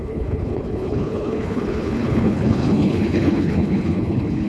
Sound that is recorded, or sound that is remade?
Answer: remade